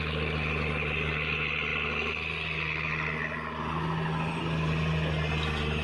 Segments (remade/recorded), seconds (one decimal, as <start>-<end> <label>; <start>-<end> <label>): 0.0-5.8 recorded